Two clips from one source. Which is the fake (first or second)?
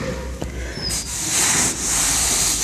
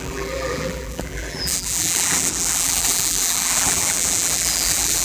second